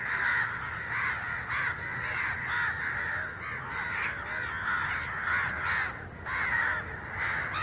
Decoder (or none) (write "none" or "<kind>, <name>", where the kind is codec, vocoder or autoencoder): none